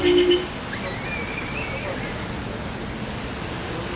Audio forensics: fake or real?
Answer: real